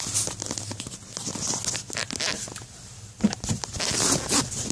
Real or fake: real